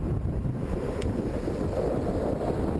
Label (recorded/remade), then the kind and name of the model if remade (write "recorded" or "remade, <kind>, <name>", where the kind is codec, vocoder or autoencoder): recorded